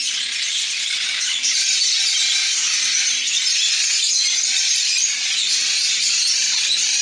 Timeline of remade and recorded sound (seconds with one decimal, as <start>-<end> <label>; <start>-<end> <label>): 0.0-7.0 recorded